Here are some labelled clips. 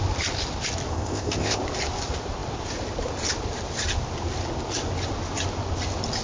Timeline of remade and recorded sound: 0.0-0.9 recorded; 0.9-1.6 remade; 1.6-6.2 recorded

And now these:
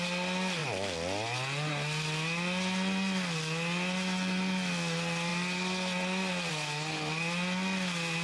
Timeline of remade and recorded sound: 0.0-8.2 recorded

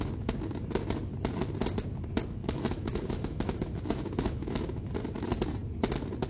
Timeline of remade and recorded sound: 0.0-2.4 recorded; 2.4-4.9 remade; 4.9-6.3 recorded